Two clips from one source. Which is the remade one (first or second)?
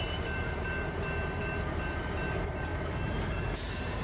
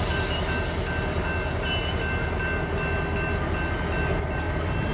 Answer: first